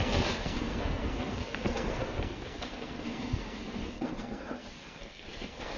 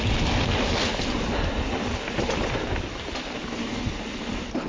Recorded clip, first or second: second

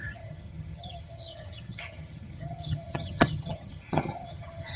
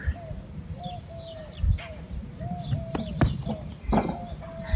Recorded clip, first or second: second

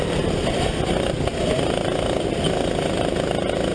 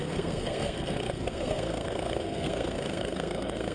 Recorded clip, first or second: first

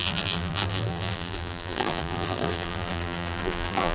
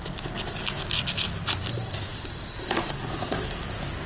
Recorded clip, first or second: second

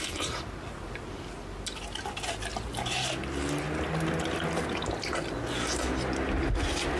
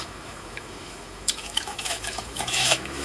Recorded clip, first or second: first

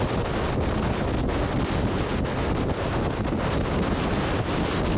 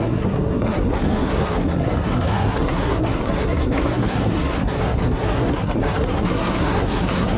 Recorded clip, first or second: first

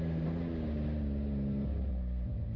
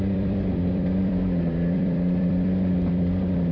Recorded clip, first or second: first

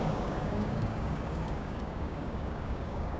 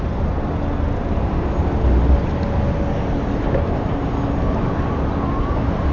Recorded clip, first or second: second